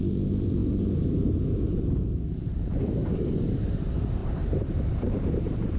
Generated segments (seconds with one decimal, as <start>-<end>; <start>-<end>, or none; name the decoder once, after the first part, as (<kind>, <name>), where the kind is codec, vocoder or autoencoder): 0.6-3.3 (vocoder, BigVGAN v2); 4.2-5.8